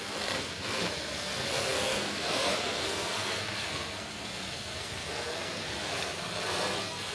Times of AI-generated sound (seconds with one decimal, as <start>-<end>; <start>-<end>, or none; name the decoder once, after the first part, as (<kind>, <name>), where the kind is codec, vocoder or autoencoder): 0.0-7.1 (codec, SNAC)